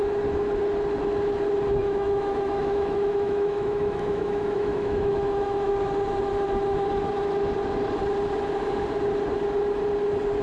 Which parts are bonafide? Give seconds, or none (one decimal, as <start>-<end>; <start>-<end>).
0.0-1.8; 5.7-10.4